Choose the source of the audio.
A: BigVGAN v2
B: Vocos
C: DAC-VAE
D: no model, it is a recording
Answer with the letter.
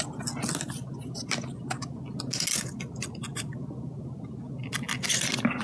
D